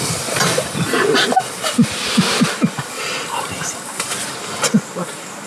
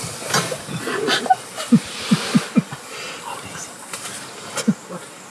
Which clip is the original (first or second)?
second